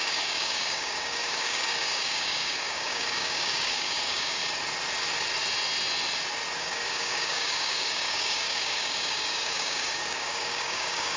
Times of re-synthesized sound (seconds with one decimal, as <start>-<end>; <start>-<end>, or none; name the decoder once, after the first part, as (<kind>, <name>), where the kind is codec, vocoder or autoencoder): 0.0-4.4 (codec, DAC); 6.6-11.2